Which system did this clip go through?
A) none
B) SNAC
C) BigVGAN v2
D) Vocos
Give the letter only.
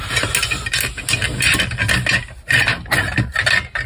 A